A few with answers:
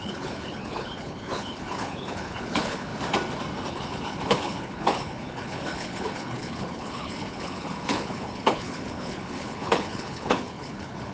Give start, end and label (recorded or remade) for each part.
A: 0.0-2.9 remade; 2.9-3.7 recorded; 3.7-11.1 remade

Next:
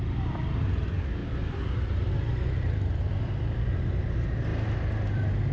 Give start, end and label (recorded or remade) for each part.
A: 0.0-5.5 recorded

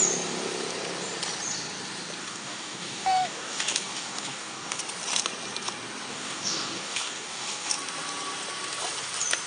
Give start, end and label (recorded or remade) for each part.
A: 0.0-2.2 recorded; 2.2-4.8 remade; 4.8-6.1 recorded; 6.1-7.7 remade; 7.7-9.5 recorded

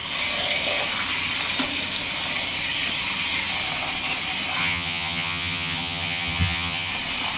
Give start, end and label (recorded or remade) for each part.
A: 0.0-4.6 recorded; 4.6-6.9 remade; 6.9-7.4 recorded